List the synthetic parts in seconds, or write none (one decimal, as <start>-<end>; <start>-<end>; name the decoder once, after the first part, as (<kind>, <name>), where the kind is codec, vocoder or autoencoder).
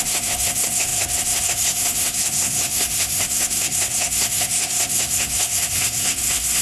0.0-6.6 (codec, SNAC)